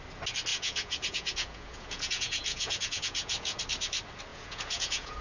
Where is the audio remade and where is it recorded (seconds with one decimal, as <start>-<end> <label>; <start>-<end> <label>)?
0.0-0.5 recorded; 0.5-3.6 remade; 3.6-4.3 recorded; 4.3-5.2 remade